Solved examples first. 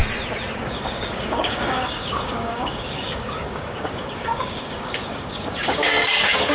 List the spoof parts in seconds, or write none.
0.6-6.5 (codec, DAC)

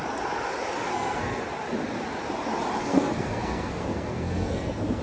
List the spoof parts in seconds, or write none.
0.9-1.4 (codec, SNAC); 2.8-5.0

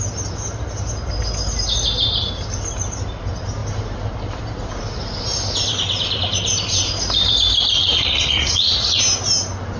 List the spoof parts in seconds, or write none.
7.8-9.0 (vocoder, Vocos)

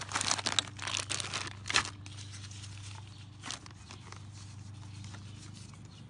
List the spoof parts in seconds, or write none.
none

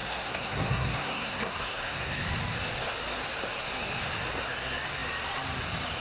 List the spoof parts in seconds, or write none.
0.0-2.2 (codec, SNAC)

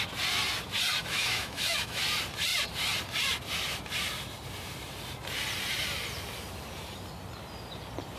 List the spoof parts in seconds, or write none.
1.0-2.0 (autoencoder, DAC-VAE)